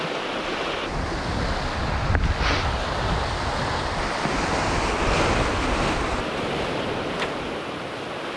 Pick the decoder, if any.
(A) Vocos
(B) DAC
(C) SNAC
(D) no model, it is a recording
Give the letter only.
D